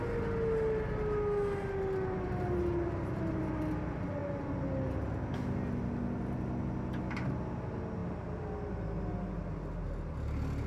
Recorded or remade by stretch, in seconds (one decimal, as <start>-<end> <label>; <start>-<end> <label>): 0.0-10.7 recorded